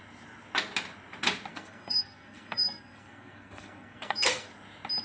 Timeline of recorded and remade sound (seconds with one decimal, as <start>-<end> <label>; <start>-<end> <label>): 0.0-1.5 recorded; 1.5-4.5 remade; 4.5-5.0 recorded